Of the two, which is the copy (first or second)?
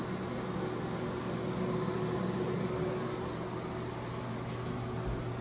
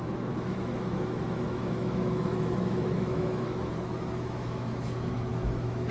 second